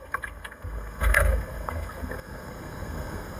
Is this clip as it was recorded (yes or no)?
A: no